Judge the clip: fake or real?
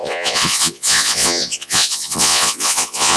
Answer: fake